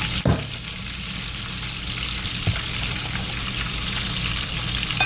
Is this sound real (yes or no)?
yes